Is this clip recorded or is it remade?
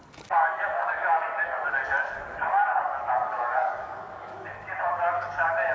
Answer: remade